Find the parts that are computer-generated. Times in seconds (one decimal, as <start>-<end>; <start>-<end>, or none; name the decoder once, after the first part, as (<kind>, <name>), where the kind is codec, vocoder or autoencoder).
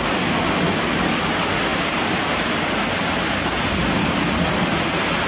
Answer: none